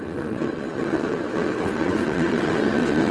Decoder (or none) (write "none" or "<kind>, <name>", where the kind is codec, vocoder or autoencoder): vocoder, WaveNeXt